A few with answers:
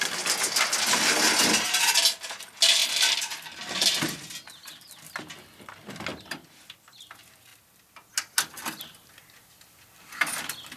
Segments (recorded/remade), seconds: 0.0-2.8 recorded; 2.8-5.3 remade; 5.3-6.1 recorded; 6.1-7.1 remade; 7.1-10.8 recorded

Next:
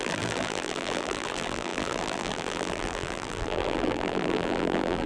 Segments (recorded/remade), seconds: 0.0-5.1 remade